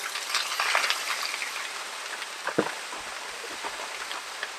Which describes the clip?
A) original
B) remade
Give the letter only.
A